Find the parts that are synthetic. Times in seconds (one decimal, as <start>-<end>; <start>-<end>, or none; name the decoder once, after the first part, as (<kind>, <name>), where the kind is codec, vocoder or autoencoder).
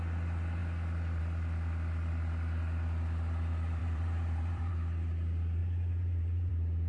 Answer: 3.8-4.7 (vocoder, BigVGAN v2); 5.6-6.5